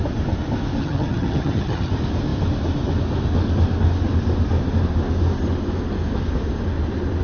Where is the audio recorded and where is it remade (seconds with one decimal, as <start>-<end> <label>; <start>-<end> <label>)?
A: 0.0-0.8 recorded; 0.8-1.9 remade; 1.9-7.2 recorded